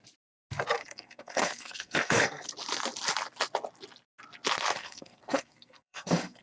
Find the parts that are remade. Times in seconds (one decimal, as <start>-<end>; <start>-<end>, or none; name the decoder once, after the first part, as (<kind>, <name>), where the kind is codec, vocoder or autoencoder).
0.8-2.5 (codec, SNAC); 4.8-6.4